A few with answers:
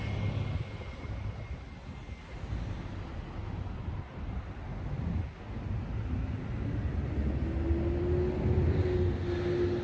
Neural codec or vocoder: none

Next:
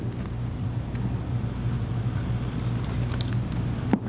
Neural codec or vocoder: none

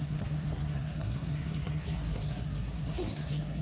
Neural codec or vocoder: codec, SNAC